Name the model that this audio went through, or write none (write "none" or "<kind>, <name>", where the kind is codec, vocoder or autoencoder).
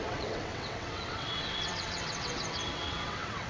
vocoder, WaveNeXt